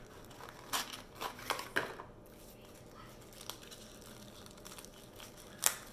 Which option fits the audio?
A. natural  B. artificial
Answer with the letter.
A